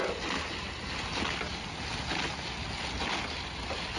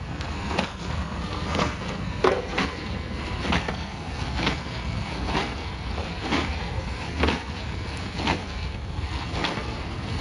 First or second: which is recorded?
first